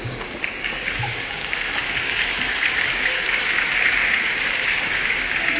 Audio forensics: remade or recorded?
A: remade